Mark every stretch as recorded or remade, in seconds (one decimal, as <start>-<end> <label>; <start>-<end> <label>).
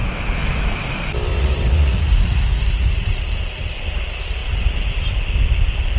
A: 0.0-1.3 recorded; 1.3-3.2 remade; 3.2-6.0 recorded